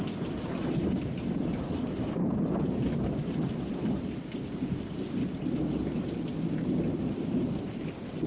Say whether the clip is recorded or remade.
recorded